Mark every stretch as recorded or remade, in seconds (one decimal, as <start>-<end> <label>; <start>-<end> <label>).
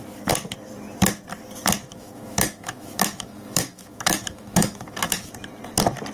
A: 0.0-1.9 recorded; 1.9-5.3 remade; 5.3-6.1 recorded